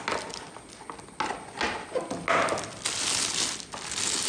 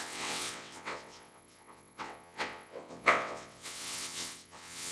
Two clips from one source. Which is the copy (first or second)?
second